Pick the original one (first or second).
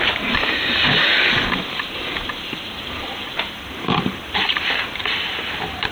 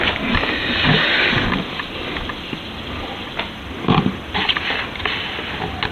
second